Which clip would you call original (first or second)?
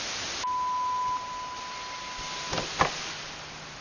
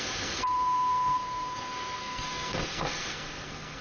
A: first